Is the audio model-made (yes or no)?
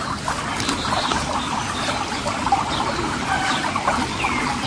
no